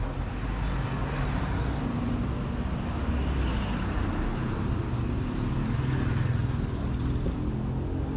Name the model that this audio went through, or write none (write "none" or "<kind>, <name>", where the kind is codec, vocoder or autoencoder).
none